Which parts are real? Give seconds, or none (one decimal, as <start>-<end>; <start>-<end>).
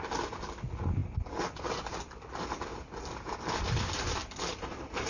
0.0-4.2